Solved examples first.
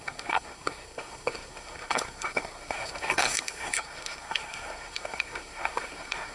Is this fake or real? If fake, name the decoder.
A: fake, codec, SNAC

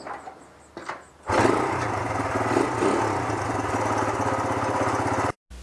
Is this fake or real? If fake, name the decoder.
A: real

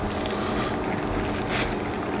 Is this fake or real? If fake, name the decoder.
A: real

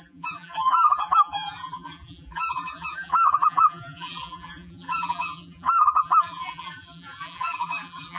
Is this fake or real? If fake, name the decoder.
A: fake, vocoder, BigVGAN v2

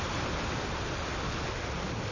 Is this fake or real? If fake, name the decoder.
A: real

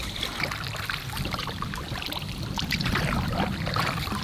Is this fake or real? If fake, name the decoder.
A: fake, vocoder, BigVGAN v2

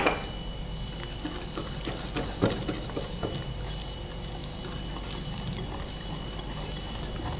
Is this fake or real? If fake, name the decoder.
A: real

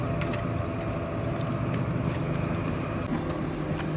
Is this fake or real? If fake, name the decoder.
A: real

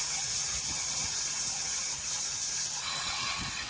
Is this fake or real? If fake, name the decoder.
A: fake, vocoder, WaveNeXt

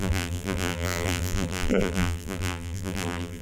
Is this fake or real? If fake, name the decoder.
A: fake, vocoder, BigVGAN v2